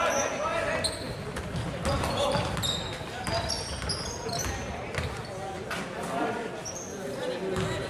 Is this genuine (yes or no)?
yes